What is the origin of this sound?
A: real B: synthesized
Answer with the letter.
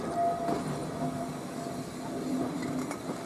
A